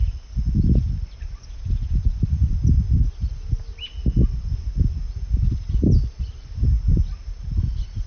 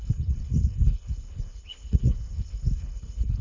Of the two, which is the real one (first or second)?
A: first